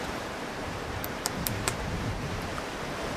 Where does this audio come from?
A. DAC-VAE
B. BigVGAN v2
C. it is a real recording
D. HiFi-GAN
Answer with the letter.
B